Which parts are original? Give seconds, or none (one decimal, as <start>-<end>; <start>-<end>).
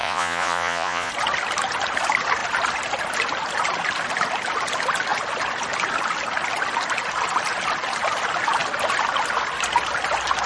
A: 1.1-10.5